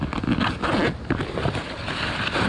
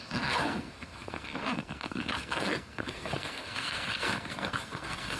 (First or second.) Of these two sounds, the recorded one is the first